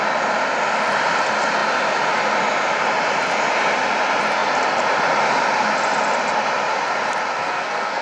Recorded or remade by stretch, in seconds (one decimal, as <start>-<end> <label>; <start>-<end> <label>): 0.0-7.3 recorded; 7.3-8.0 remade